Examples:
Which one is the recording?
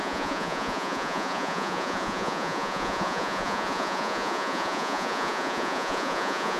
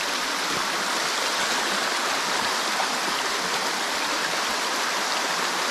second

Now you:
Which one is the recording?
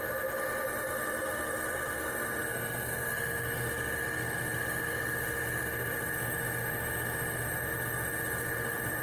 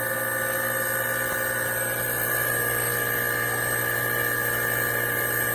second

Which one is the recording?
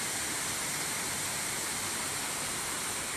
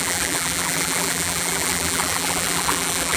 first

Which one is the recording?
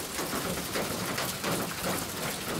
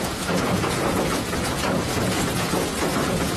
first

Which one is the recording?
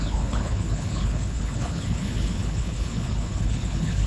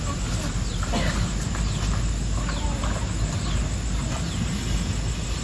second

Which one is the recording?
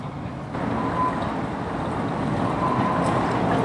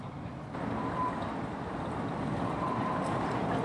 first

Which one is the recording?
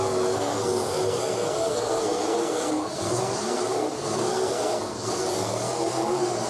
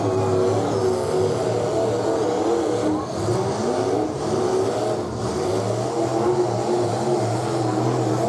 second